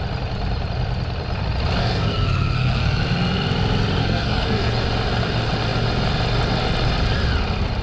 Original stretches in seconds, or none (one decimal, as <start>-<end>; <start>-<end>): 0.0-1.8; 3.0-4.0; 4.7-7.8